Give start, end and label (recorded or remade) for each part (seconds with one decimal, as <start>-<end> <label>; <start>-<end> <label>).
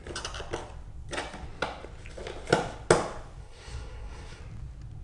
0.0-3.4 recorded; 3.4-4.4 remade; 4.4-5.0 recorded